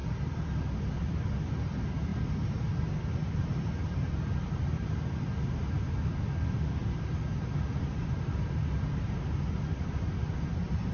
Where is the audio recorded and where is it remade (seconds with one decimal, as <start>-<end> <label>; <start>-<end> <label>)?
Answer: 0.0-10.9 recorded